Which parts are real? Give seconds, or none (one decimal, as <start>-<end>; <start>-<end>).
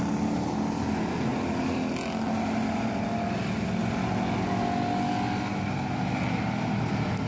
0.0-7.3